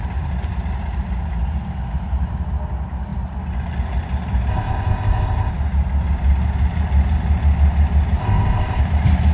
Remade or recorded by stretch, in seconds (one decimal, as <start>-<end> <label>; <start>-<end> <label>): 0.0-4.5 recorded; 4.5-5.5 remade; 5.5-8.2 recorded; 8.2-8.8 remade; 8.8-9.3 recorded